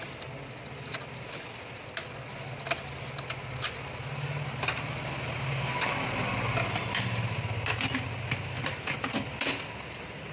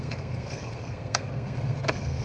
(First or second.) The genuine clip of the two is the first